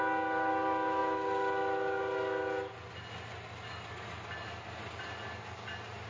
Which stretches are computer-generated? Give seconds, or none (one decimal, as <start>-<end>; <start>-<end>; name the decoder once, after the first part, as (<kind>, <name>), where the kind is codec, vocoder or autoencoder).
none